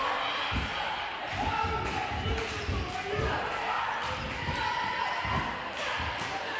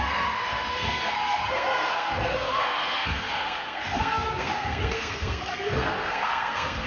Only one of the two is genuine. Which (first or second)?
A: first